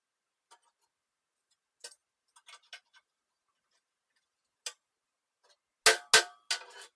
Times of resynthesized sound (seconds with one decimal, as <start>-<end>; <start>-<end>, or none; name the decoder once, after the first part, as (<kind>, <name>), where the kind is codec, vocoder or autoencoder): none